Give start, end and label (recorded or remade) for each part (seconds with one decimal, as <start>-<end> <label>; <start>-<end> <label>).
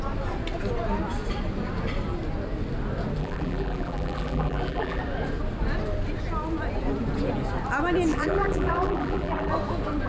0.0-3.2 recorded; 3.2-5.0 remade; 5.0-8.1 recorded; 8.1-9.5 remade; 9.5-10.1 recorded